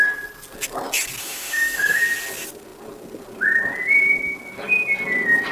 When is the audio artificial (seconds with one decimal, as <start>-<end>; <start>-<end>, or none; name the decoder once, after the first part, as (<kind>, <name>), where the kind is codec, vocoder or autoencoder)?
1.2-2.0 (autoencoder, DAC-VAE)